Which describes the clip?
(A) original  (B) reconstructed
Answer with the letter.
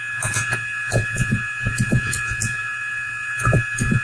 B